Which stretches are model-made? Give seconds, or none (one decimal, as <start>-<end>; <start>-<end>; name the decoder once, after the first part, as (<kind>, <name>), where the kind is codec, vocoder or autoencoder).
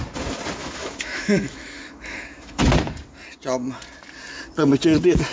0.6-2.6 (autoencoder, DAC-VAE)